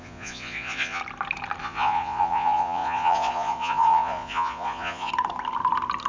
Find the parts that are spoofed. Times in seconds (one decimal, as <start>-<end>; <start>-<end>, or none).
0.0-1.0; 1.6-5.1